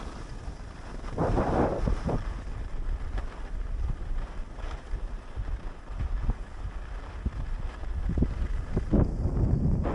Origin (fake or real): real